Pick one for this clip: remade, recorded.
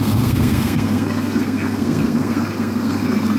remade